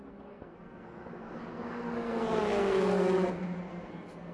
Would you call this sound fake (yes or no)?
yes